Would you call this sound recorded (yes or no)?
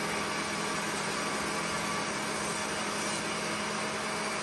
yes